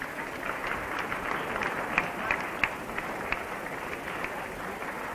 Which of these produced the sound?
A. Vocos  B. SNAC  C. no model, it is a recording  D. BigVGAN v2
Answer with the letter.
C